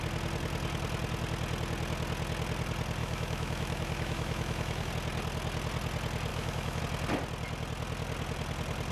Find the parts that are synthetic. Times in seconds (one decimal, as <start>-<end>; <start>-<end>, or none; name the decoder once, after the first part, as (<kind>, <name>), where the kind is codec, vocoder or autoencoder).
3.0-4.9 (autoencoder, DAC-VAE); 6.3-6.8